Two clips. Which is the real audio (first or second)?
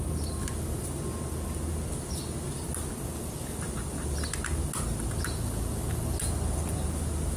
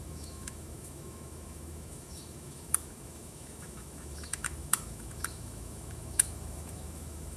first